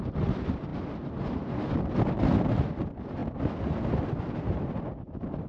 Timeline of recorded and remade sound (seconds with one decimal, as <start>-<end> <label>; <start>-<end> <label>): 0.0-3.2 remade; 3.2-4.8 recorded; 4.8-5.5 remade